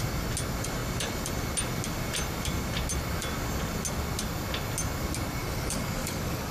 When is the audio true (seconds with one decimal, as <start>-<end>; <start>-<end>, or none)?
0.0-5.4